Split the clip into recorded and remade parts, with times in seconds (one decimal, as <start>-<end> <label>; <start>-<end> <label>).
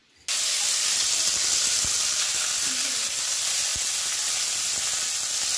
0.0-5.6 recorded